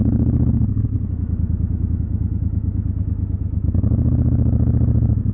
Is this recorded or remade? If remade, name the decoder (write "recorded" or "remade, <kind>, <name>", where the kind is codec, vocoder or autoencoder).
remade, autoencoder, DAC-VAE